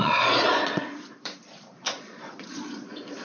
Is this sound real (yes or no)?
no